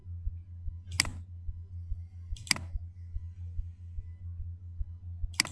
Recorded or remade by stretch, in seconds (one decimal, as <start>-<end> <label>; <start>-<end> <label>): 0.0-5.5 recorded